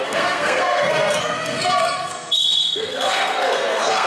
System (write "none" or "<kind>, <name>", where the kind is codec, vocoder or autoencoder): codec, SNAC